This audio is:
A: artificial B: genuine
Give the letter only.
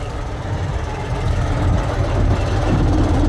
A